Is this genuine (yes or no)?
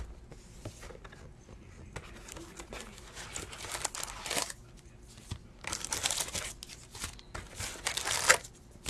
yes